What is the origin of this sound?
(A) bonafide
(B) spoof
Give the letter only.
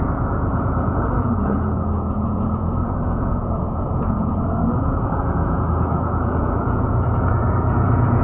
B